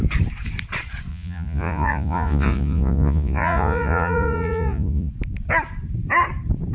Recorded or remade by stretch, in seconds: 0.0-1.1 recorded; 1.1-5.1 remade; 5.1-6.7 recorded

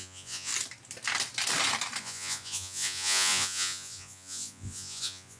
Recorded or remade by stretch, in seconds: 0.0-0.5 remade; 0.5-2.0 recorded; 2.0-5.4 remade

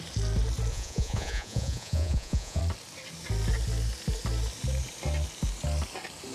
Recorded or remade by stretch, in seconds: 0.0-0.7 recorded; 0.7-2.6 remade; 2.6-6.3 recorded

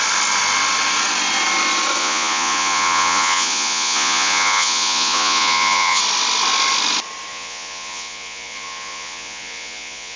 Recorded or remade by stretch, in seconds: 0.0-2.0 recorded; 2.0-6.0 remade; 6.0-7.3 recorded; 7.3-10.2 remade

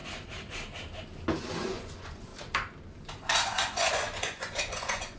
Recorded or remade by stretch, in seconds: 0.0-1.5 recorded; 1.5-2.3 remade; 2.3-3.2 recorded; 3.2-5.2 remade

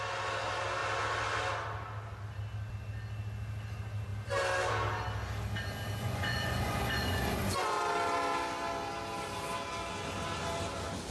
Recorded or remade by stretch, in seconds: 0.0-6.0 recorded; 6.0-7.8 remade; 7.8-11.1 recorded

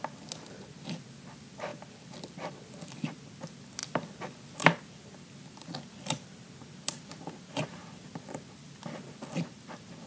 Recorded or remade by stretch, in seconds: 0.0-10.1 recorded

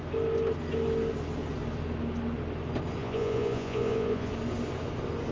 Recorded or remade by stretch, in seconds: 0.0-3.0 recorded; 3.0-4.3 remade; 4.3-5.3 recorded